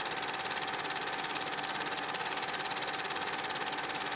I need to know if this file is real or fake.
real